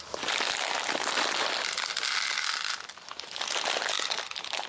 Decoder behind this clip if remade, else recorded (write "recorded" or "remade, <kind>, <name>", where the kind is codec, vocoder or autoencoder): recorded